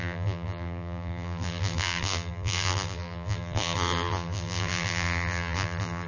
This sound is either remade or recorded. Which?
remade